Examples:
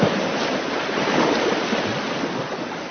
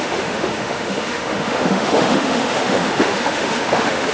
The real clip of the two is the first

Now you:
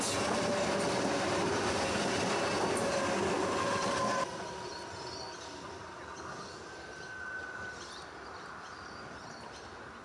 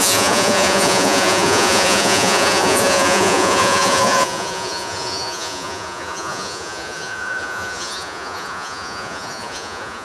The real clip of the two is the first